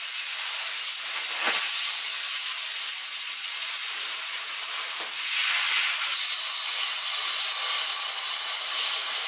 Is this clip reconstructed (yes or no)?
no